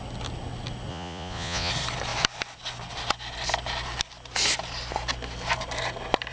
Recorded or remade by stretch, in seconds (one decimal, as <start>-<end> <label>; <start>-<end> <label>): 0.0-0.9 recorded; 0.9-1.7 remade; 1.7-6.3 recorded